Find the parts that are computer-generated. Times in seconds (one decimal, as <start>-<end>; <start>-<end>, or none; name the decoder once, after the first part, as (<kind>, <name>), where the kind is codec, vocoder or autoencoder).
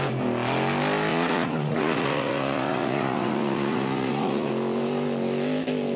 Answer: 1.1-4.5 (vocoder, Vocos)